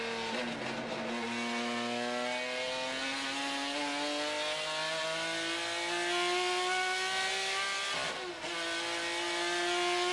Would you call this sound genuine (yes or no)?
yes